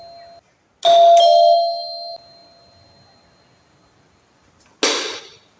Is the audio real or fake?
real